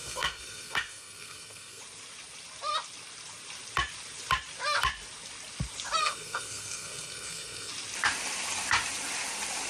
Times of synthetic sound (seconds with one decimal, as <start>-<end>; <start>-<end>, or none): 0.0-1.8; 6.0-7.7